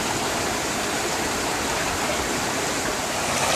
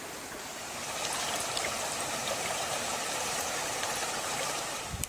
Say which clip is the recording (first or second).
first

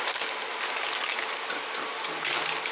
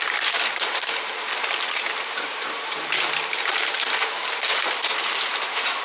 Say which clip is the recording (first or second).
first